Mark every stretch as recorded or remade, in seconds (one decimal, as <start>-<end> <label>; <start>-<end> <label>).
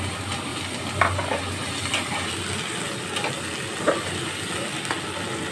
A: 0.0-5.5 recorded